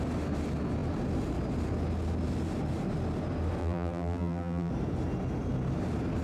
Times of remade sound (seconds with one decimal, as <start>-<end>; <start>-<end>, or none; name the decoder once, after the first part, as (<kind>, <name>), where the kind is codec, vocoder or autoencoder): 3.6-4.7 (vocoder, BigVGAN v2)